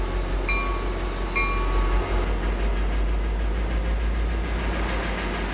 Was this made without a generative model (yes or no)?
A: yes